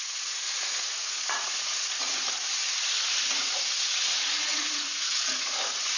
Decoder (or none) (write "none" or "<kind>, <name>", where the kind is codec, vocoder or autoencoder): vocoder, Vocos